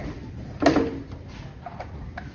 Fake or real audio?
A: real